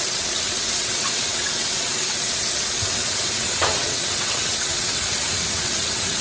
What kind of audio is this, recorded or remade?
remade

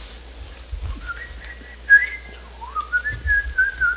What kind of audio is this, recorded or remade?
recorded